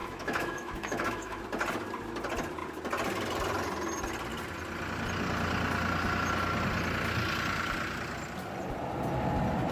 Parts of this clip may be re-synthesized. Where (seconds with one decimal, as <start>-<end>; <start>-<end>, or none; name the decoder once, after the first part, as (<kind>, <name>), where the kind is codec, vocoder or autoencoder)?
0.0-1.4 (autoencoder, DAC-VAE)